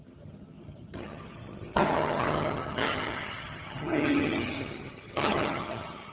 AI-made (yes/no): yes